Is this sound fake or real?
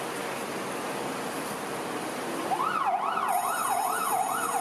real